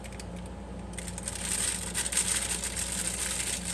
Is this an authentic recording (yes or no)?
yes